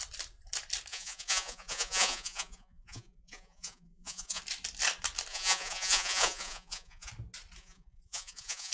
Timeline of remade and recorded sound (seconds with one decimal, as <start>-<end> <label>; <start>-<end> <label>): 0.0-0.9 recorded; 0.9-4.4 remade; 4.4-5.3 recorded; 5.3-7.1 remade; 7.1-7.6 recorded; 7.6-8.7 remade